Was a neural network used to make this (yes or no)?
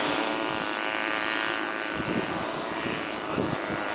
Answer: yes